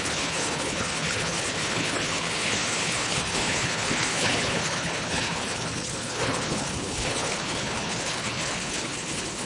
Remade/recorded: remade